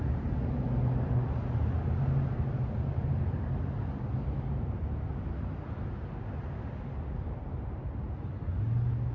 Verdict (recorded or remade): recorded